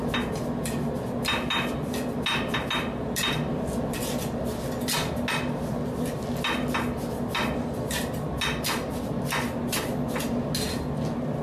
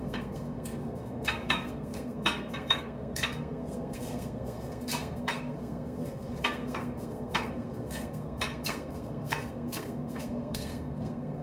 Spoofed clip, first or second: second